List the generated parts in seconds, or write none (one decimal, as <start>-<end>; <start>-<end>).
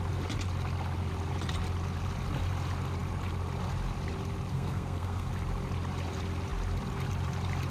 4.5-5.3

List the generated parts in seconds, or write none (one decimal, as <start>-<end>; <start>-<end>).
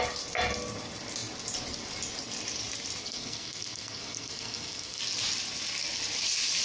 3.0-5.0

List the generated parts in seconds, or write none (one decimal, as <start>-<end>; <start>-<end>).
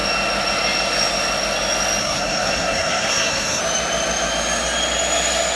2.0-3.6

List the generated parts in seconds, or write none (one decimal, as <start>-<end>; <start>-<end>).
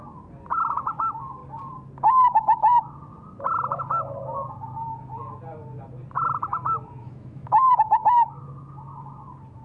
7.0-7.7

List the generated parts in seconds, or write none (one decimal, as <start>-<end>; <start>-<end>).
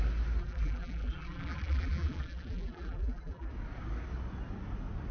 0.4-3.5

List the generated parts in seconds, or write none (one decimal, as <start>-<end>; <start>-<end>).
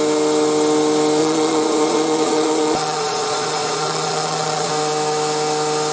1.2-4.7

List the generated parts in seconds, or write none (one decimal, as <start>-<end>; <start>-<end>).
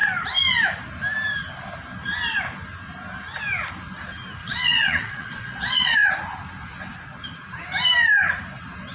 4.4-6.1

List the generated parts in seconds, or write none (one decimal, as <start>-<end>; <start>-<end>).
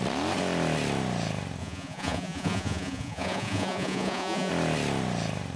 1.6-4.5